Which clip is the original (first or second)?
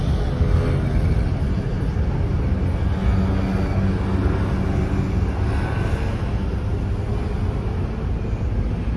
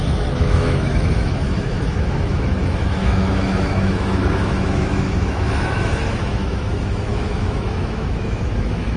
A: first